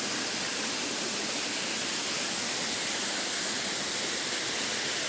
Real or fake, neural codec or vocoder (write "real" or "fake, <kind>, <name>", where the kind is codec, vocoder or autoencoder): real